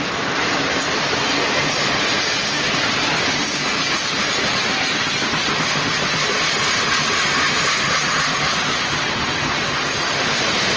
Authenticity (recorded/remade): recorded